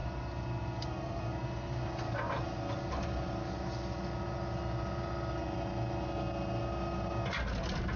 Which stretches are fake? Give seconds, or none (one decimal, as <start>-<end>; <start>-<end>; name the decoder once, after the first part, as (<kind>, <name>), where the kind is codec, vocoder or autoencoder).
none